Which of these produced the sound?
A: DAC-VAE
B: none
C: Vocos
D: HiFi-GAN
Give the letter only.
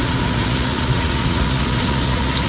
C